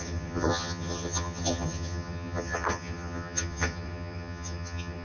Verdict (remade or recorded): remade